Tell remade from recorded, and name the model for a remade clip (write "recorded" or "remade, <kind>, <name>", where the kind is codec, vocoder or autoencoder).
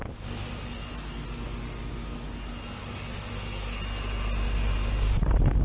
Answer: recorded